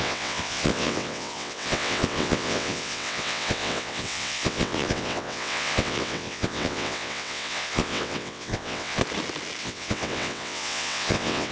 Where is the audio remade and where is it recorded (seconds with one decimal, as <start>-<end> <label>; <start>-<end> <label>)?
0.0-9.0 remade; 9.0-9.6 recorded; 9.6-11.5 remade